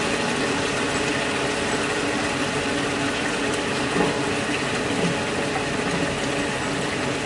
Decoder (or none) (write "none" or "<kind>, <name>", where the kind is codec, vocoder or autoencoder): none